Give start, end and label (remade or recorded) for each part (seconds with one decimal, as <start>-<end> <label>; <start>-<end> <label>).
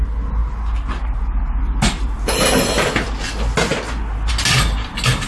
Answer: 0.0-5.3 recorded